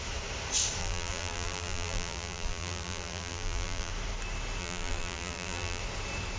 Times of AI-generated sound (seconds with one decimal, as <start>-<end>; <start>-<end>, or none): 0.8-3.9; 4.6-5.8